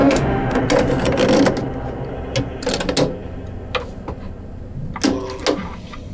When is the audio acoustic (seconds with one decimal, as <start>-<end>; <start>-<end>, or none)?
0.6-6.1